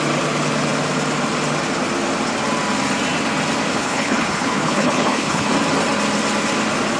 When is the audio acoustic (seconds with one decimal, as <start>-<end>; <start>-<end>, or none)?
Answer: 0.0-3.7; 5.5-7.0

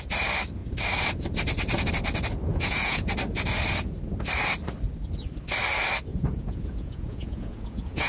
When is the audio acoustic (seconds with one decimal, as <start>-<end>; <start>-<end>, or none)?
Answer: 0.0-2.5; 3.1-6.1

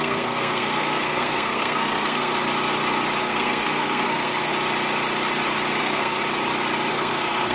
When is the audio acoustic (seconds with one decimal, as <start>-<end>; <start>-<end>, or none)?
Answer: 2.3-3.2; 4.5-5.8; 6.2-6.9